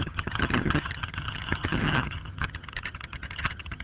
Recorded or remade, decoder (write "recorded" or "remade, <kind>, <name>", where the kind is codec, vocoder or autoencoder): remade, vocoder, HiFi-GAN